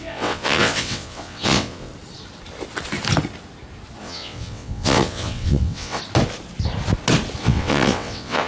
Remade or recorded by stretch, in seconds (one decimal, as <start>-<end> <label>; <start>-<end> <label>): 0.0-1.9 remade; 1.9-4.0 recorded; 4.0-6.0 remade; 6.0-7.4 recorded; 7.4-8.5 remade